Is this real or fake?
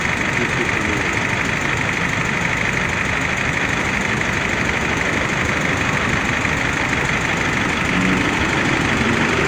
fake